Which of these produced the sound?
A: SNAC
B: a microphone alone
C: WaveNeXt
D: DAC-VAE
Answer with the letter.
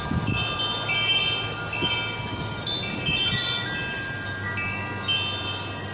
B